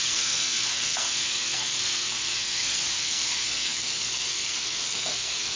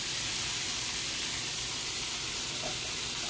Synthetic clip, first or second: first